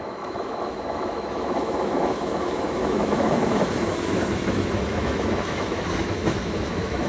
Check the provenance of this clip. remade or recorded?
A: remade